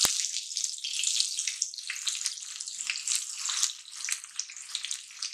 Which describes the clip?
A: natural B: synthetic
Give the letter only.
A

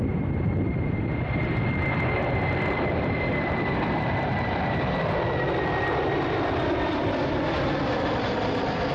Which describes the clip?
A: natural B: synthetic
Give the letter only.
B